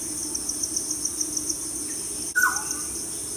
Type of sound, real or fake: real